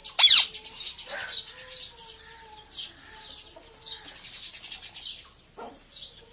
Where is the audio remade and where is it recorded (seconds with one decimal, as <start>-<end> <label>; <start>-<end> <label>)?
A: 0.0-6.3 recorded

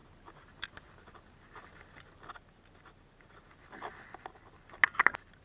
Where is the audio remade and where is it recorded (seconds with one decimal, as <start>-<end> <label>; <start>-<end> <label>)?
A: 0.0-5.4 recorded

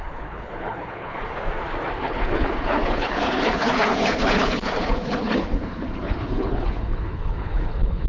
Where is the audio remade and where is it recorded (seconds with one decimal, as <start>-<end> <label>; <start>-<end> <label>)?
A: 0.0-1.3 remade; 1.3-2.0 recorded; 2.0-8.1 remade

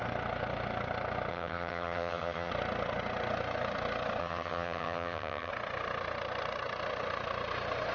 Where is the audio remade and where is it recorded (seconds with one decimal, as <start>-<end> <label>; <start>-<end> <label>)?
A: 0.0-1.3 recorded; 1.3-2.5 remade; 2.5-4.2 recorded; 4.2-5.5 remade; 5.5-7.9 recorded